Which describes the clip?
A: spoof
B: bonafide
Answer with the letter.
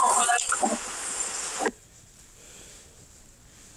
B